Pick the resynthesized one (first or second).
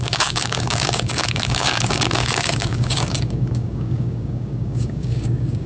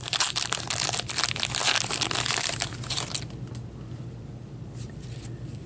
first